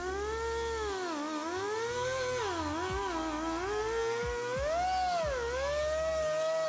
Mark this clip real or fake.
real